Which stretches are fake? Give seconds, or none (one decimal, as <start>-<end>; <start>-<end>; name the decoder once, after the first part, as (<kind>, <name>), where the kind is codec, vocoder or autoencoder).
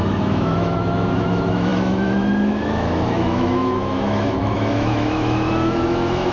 0.0-6.3 (autoencoder, DAC-VAE)